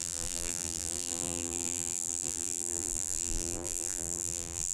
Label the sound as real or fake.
fake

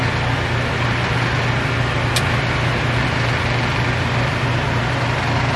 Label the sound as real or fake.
real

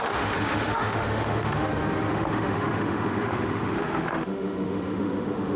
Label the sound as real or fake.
fake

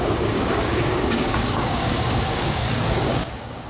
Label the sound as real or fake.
fake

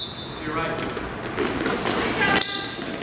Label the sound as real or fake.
real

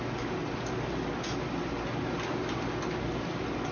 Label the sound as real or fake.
real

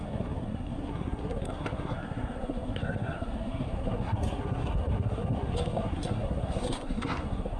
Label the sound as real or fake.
fake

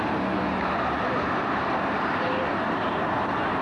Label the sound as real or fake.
real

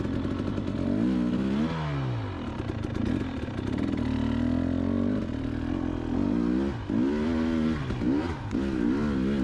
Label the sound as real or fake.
real